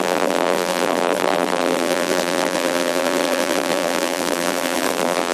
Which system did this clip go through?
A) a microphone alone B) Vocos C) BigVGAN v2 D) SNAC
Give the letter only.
C